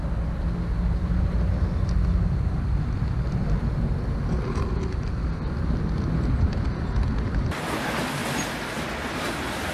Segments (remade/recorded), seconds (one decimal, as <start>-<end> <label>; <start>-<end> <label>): 0.0-9.7 recorded